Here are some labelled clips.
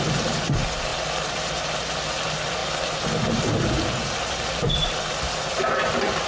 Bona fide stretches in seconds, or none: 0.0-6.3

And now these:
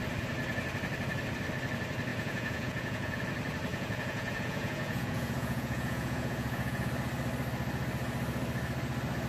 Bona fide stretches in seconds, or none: 0.0-2.1; 3.2-3.7; 6.9-9.3

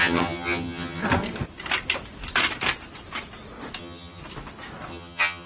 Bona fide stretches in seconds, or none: 1.0-3.8; 4.2-4.9

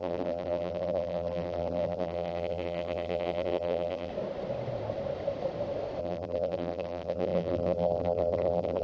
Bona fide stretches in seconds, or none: 4.1-6.0

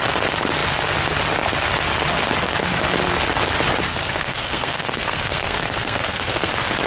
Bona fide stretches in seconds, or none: 0.0-3.9; 6.5-6.9

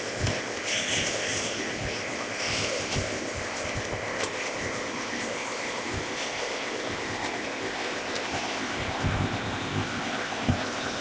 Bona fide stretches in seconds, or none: none

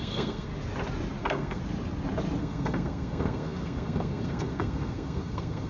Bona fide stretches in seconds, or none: 0.5-1.2; 1.6-2.4

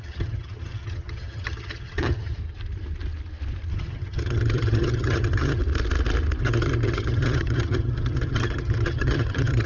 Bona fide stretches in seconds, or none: 2.4-3.7; 5.6-6.4